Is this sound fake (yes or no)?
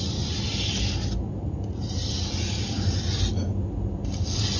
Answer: no